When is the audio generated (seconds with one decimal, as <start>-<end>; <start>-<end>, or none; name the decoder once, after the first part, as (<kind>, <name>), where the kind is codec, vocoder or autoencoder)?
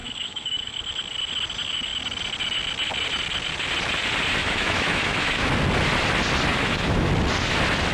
0.0-0.8 (autoencoder, DAC-VAE); 4.4-5.5; 6.5-7.1